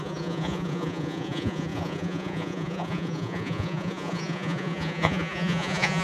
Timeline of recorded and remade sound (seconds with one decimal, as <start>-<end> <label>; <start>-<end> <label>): 0.0-6.0 remade